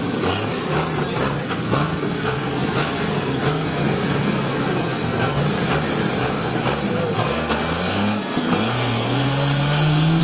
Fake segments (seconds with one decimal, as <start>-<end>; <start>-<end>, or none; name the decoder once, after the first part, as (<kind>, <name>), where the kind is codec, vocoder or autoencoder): 1.4-5.4 (codec, SNAC); 7.0-10.2